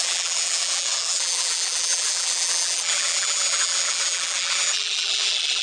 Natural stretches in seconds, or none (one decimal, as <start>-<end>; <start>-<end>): none